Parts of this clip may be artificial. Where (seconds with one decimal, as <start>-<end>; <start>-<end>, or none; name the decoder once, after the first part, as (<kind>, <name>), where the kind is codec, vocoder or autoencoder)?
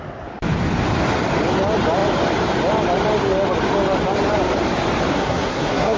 5.1-6.0 (codec, SNAC)